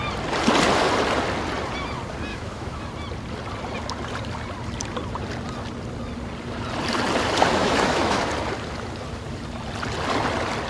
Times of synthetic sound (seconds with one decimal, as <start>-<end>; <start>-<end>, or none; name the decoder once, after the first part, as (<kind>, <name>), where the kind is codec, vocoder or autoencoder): 2.3-2.8 (autoencoder, DAC-VAE); 7.6-8.2